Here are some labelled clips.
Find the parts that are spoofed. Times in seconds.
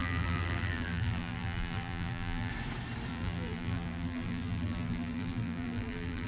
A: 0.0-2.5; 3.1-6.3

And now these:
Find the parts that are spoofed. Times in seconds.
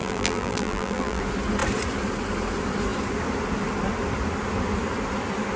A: 0.0-1.2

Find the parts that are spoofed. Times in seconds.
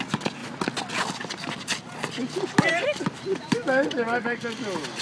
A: 2.2-5.0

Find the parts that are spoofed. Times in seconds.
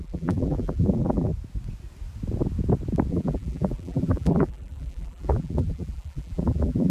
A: 0.0-1.3; 3.1-6.9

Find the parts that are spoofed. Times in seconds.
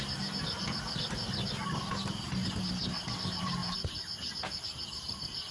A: none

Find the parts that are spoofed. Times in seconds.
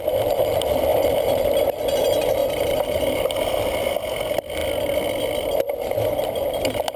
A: 0.9-1.7; 2.4-3.5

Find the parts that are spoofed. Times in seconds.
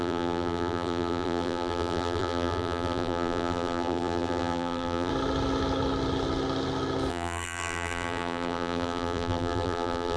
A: 0.0-5.1; 7.1-10.2